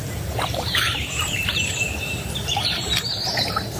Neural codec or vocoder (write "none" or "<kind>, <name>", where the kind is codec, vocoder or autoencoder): vocoder, BigVGAN v2